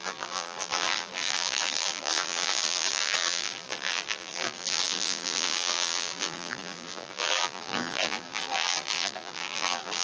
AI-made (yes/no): yes